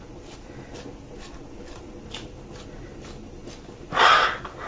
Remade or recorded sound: recorded